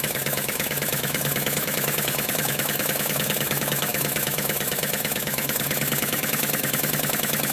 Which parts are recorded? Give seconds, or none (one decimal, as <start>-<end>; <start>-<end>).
none